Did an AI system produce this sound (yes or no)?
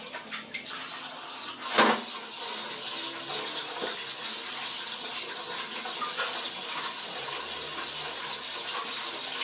no